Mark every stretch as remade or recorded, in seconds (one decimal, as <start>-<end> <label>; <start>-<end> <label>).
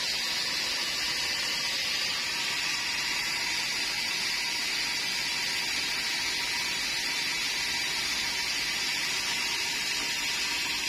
0.0-10.9 recorded